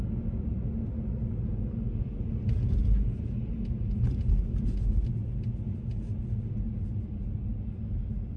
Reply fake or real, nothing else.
real